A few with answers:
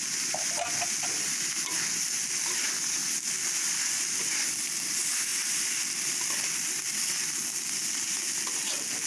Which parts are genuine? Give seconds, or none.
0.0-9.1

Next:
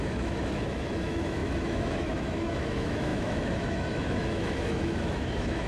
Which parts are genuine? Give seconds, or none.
none

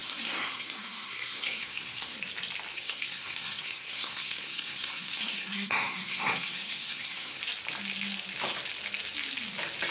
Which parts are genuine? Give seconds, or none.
2.2-2.7; 7.4-9.9

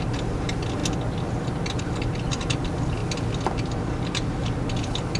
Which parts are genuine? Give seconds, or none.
0.0-5.2

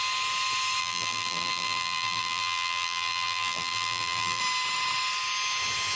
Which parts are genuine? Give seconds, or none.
0.0-0.8; 4.4-6.0